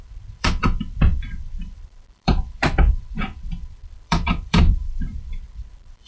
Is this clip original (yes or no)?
no